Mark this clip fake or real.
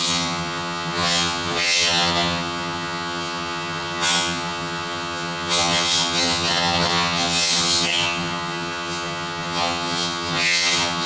fake